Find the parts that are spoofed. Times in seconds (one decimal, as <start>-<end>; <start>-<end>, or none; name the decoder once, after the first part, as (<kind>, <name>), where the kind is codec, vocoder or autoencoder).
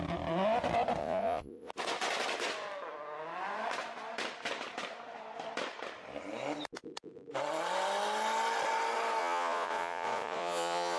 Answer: 1.0-1.7 (vocoder, Vocos); 9.2-11.0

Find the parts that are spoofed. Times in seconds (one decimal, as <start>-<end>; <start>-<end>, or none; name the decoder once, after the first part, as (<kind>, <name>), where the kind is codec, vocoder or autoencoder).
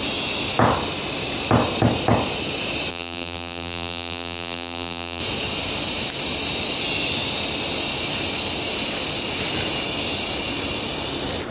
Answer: 2.9-5.2 (vocoder, BigVGAN v2)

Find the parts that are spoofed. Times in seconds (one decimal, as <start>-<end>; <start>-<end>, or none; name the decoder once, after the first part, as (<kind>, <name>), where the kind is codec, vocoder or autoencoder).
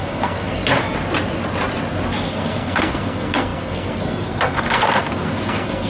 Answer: 0.0-0.6 (codec, SNAC); 2.2-5.9